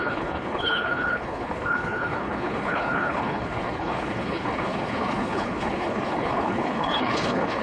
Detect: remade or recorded remade